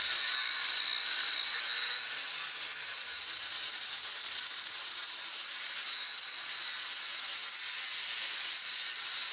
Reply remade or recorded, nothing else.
recorded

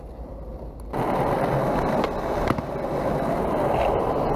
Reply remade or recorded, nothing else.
recorded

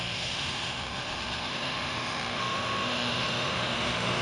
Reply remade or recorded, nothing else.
remade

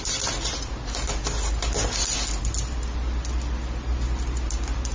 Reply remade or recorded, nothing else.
recorded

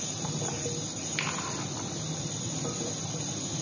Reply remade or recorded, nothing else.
recorded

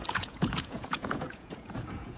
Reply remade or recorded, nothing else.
remade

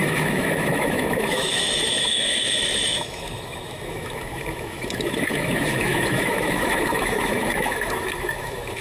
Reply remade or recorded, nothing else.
remade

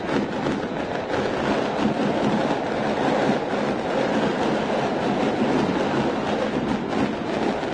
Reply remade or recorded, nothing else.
recorded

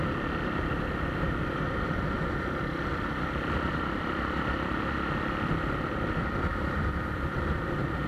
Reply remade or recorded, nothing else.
remade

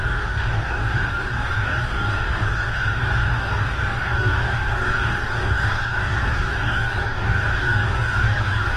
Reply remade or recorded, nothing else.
remade